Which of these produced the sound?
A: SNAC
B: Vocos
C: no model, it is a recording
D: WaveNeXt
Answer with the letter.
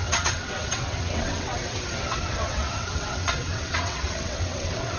D